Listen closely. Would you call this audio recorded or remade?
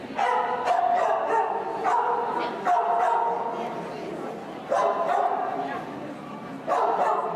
recorded